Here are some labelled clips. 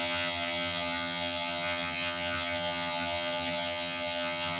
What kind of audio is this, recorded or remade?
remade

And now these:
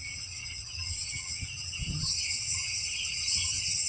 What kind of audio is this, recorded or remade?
remade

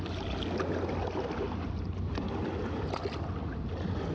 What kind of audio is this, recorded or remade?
recorded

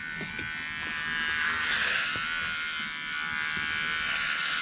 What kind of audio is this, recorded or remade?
recorded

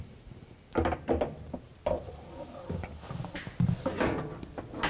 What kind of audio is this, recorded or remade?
recorded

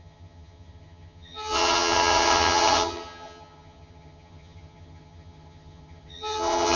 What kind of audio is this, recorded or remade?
remade